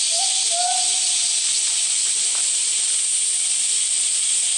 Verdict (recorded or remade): recorded